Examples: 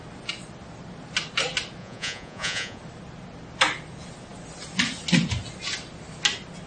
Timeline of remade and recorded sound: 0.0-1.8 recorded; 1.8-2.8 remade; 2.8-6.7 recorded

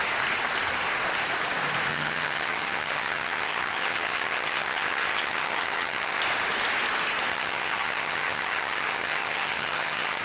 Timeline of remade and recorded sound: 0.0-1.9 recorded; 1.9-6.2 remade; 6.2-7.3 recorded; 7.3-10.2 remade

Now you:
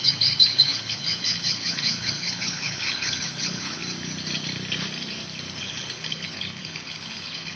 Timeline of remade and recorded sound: 0.0-3.8 remade; 3.8-5.6 recorded; 5.6-7.6 remade

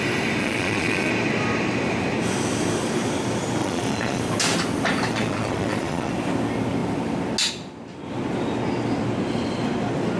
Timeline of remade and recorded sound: 0.0-0.4 recorded; 0.4-1.1 remade; 1.1-3.6 recorded; 3.6-4.2 remade; 4.2-5.1 recorded; 5.1-6.1 remade; 6.1-10.2 recorded